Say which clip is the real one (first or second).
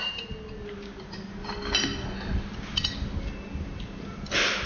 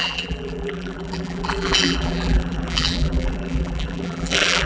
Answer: first